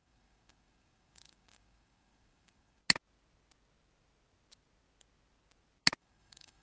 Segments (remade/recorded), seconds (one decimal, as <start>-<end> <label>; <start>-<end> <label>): 0.0-2.8 remade; 2.8-6.0 recorded; 6.0-6.6 remade

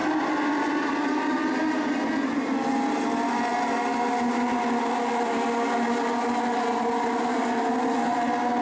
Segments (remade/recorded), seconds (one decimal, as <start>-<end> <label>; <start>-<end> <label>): 0.0-8.6 recorded

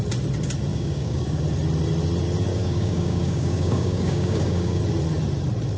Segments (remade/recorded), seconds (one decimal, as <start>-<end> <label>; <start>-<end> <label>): 0.0-0.7 recorded; 0.7-1.4 remade; 1.4-2.5 recorded; 2.5-4.8 remade; 4.8-5.8 recorded